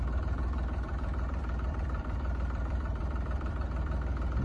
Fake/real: fake